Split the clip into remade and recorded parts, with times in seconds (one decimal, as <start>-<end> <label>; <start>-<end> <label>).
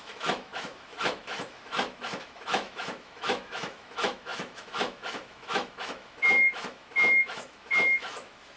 0.0-8.6 remade